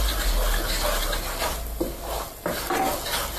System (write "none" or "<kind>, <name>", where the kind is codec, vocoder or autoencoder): none